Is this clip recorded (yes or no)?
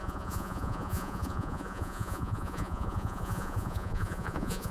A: no